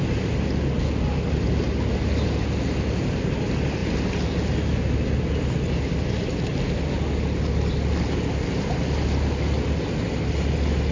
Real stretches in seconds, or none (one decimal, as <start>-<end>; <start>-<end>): 0.0-3.8; 6.9-10.9